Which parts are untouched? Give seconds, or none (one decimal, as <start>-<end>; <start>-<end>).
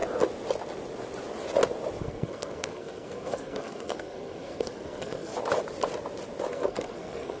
0.0-2.0; 5.3-6.5